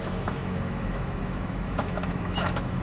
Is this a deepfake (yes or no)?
yes